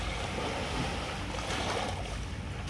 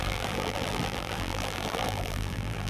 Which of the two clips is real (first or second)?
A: first